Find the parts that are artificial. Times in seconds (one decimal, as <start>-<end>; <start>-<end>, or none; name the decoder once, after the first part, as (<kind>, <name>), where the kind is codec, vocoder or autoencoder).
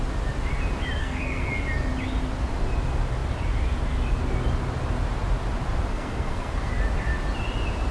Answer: 1.0-1.5 (codec, SNAC); 5.9-6.7